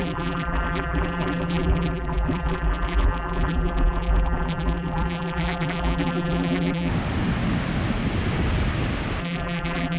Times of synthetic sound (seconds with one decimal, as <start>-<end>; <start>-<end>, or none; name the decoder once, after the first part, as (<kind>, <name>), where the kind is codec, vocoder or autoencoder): 0.0-6.9 (vocoder, BigVGAN v2); 9.2-10.0